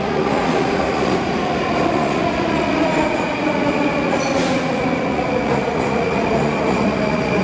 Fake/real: fake